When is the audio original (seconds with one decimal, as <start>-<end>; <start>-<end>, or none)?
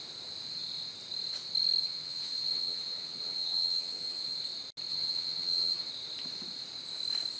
0.0-1.8; 4.4-4.9; 5.9-7.4